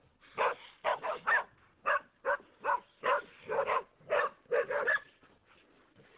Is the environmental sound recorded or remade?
recorded